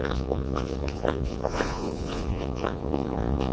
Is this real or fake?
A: fake